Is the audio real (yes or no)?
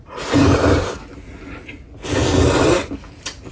yes